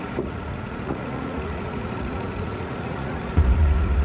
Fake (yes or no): yes